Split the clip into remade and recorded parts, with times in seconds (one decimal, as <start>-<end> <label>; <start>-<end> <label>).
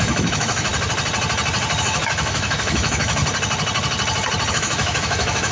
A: 0.0-0.7 remade; 0.7-1.8 recorded; 1.8-3.2 remade; 3.2-4.5 recorded; 4.5-5.5 remade